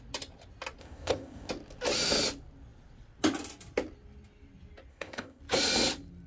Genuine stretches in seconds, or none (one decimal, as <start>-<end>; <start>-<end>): 0.0-0.8; 1.5-4.9; 5.4-6.3